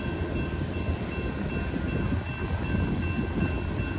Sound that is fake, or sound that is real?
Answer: real